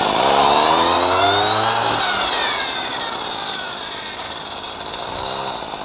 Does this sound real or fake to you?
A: real